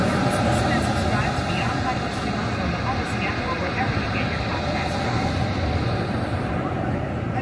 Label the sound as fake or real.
real